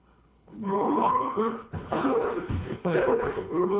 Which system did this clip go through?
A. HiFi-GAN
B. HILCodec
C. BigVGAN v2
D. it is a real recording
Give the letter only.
B